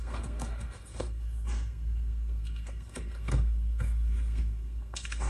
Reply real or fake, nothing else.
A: fake